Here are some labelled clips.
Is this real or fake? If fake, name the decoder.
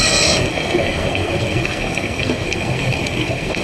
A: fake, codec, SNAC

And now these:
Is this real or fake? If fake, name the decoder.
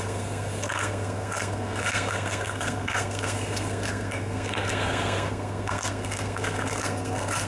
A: fake, codec, SNAC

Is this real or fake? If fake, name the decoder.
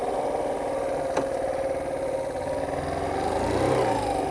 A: real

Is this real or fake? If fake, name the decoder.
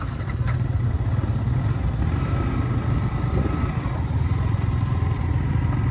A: real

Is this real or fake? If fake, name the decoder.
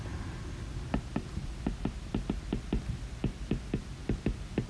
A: real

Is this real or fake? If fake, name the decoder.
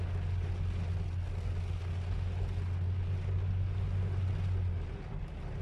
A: real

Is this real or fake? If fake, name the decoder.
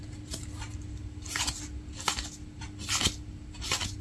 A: real